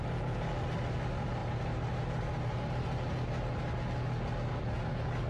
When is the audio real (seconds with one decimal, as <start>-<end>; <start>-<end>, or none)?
0.0-5.3